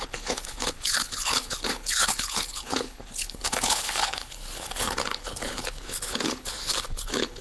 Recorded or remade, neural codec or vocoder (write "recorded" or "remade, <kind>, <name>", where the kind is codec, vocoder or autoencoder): remade, codec, HILCodec